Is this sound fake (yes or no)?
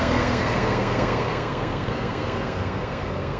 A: yes